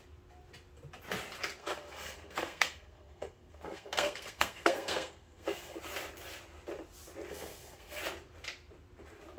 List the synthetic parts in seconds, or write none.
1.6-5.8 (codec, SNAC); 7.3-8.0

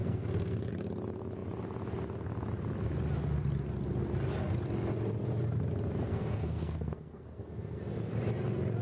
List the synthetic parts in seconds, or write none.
0.0-0.7 (codec, SNAC); 6.1-7.8

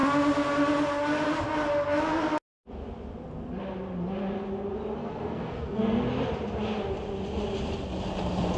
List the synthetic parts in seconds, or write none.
5.0-6.1 (codec, SNAC)

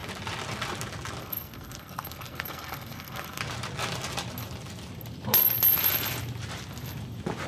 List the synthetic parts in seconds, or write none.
1.2-3.4 (codec, SNAC)

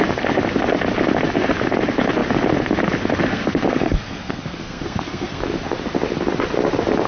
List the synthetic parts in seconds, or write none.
3.3-5.4 (codec, SNAC)